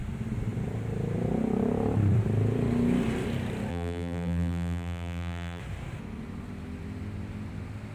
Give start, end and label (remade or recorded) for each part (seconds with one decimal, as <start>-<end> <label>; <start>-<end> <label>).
0.0-3.7 recorded; 3.7-5.6 remade; 5.6-7.9 recorded